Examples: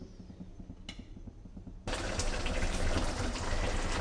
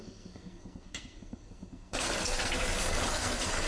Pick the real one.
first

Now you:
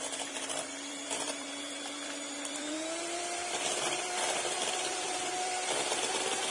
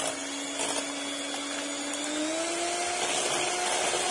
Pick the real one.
second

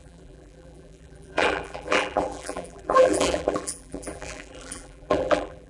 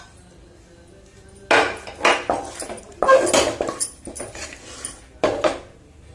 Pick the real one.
second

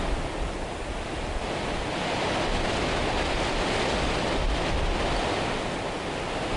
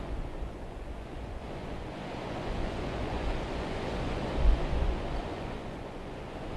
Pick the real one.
first